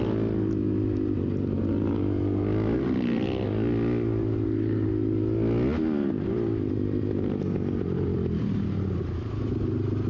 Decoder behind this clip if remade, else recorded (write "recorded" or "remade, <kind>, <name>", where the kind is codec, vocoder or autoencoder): recorded